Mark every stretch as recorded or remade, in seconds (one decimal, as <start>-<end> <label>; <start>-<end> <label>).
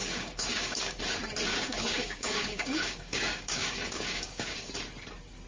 0.0-1.0 remade; 1.0-1.5 recorded; 1.5-4.7 remade; 4.7-5.5 recorded